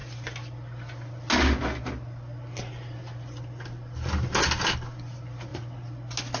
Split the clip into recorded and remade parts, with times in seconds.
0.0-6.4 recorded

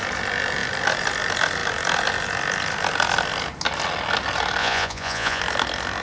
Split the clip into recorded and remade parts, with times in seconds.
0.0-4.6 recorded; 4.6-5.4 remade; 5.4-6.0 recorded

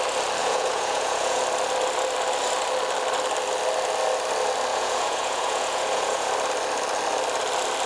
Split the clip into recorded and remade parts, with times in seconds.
0.0-0.4 recorded; 0.4-1.4 remade; 1.4-4.7 recorded; 4.7-6.3 remade; 6.3-7.9 recorded